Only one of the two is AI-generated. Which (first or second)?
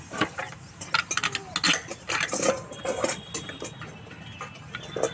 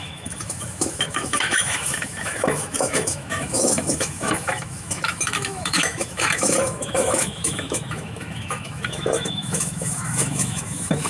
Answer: second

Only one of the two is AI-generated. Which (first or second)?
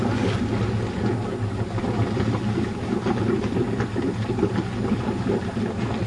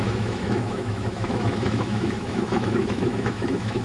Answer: second